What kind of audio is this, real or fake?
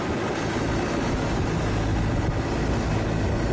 real